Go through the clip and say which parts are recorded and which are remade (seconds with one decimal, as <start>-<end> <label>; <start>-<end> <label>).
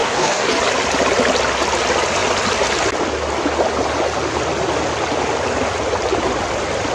0.0-0.6 remade; 0.6-6.9 recorded